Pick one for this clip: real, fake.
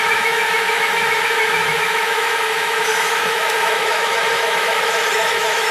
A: fake